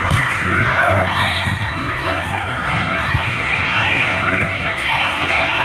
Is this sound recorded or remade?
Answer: remade